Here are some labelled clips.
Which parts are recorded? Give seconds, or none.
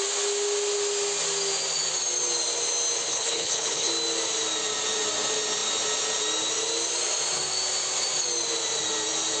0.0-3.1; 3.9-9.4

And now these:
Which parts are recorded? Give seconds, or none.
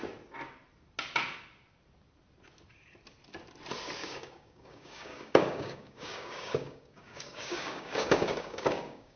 0.0-4.0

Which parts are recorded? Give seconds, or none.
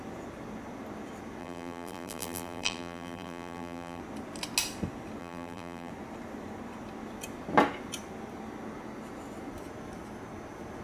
0.0-1.4; 4.0-5.2; 5.9-10.8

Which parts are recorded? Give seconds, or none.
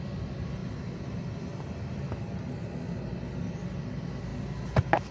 0.0-5.1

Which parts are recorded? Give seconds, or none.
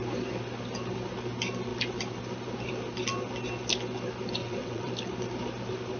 0.0-4.4; 4.9-6.0